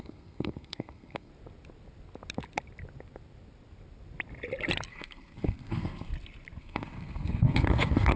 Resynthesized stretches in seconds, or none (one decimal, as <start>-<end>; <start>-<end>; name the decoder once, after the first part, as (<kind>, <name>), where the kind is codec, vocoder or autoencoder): 0.0-1.3 (codec, SNAC); 4.9-6.1; 6.6-8.2